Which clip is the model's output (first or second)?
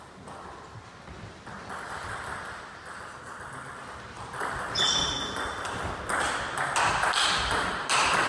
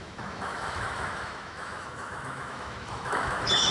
second